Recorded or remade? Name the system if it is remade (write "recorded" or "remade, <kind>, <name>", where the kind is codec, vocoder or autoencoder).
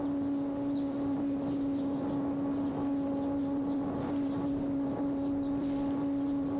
recorded